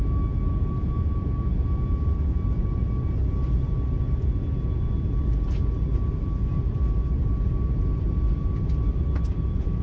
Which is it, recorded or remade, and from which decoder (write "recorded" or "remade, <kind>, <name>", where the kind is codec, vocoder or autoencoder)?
recorded